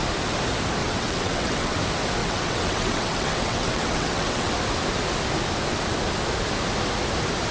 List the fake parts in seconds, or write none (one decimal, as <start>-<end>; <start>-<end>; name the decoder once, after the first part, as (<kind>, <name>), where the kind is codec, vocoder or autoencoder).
0.8-1.8 (vocoder, WaveNeXt); 2.2-4.5